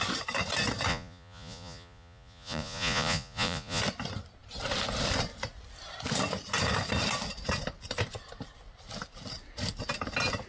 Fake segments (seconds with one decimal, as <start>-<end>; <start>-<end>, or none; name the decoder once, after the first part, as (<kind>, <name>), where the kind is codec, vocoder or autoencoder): 0.9-3.8 (vocoder, Vocos)